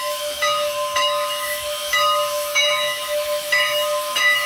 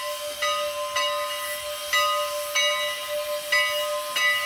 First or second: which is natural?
second